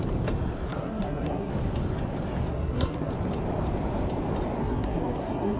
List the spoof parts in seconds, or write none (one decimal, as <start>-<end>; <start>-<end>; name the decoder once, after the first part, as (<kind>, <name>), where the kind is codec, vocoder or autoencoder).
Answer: 0.7-1.5 (codec, SNAC); 2.5-3.1; 4.6-5.6